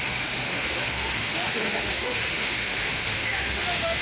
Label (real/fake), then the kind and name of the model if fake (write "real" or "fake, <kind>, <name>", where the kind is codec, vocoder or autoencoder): fake, autoencoder, DAC-VAE